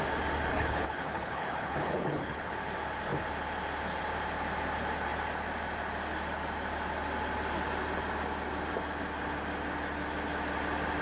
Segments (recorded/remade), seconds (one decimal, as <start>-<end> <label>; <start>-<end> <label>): 0.0-0.5 recorded; 0.5-2.5 remade; 2.5-11.0 recorded